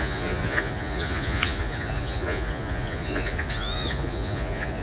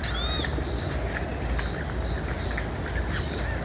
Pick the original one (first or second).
second